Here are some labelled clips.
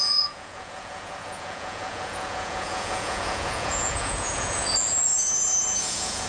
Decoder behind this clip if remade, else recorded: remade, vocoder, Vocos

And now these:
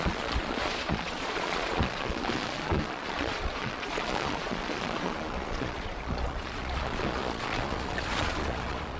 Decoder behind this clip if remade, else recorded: remade, vocoder, Vocos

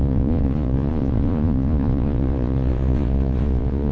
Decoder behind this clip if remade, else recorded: remade, vocoder, Vocos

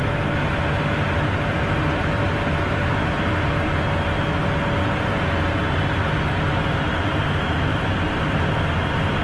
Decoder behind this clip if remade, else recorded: recorded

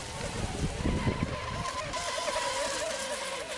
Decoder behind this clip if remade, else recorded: recorded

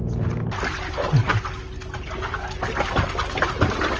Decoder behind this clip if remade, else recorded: recorded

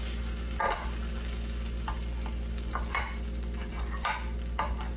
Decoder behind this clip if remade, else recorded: recorded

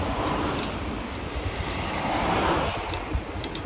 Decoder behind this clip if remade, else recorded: recorded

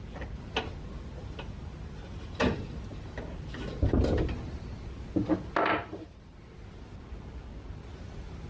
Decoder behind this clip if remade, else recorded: recorded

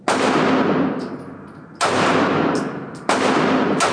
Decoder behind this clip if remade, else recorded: recorded